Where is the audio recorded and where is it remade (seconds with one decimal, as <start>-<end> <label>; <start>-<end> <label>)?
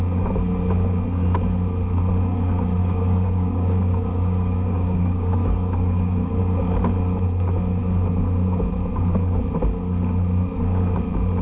0.0-2.8 recorded; 2.8-6.4 remade; 6.4-11.4 recorded